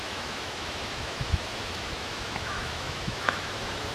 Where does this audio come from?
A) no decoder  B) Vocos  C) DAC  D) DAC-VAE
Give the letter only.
D